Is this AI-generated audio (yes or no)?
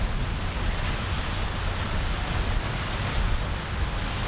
no